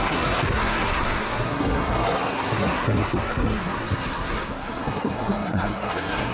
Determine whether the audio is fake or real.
fake